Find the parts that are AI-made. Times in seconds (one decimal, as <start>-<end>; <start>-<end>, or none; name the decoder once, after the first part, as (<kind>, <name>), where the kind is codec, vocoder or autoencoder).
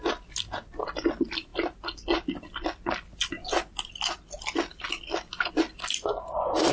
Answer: none